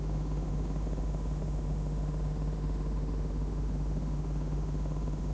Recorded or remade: remade